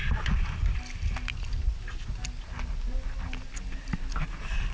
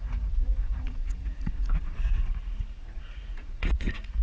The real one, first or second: first